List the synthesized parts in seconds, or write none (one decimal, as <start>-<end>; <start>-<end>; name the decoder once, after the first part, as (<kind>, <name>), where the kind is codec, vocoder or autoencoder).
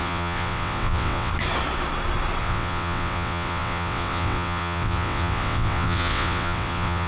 0.0-1.3 (vocoder, WaveNeXt); 2.4-7.1